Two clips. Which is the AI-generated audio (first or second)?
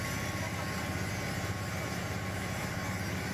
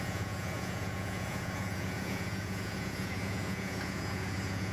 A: second